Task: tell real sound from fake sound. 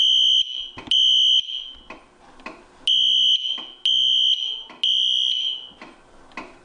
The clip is real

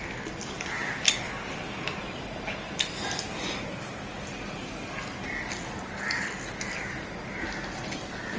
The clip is real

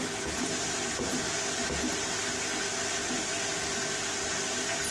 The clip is real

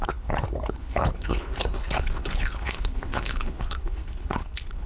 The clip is fake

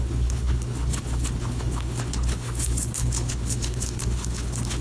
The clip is fake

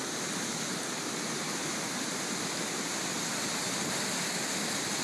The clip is real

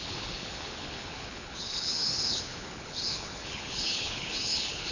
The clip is fake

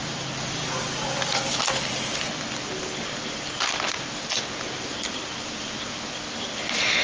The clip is real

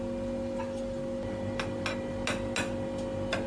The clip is real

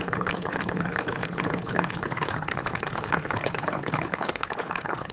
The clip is fake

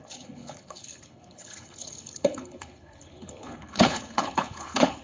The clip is fake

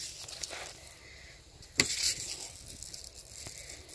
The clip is real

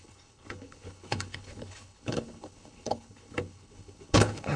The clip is fake